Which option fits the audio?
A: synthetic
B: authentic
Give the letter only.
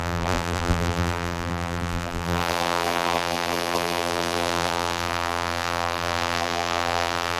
A